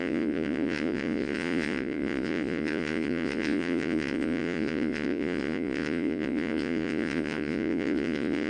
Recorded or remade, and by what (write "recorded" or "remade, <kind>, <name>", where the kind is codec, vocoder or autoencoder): remade, vocoder, Vocos